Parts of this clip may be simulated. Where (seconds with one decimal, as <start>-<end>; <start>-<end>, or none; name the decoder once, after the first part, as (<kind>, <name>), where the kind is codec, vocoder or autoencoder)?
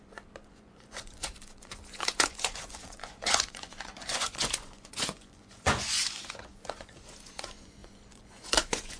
0.0-9.0 (vocoder, Vocos)